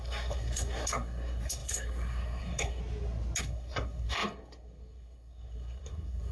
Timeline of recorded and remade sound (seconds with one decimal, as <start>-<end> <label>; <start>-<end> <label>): 0.0-2.8 remade; 2.8-3.4 recorded; 3.4-6.3 remade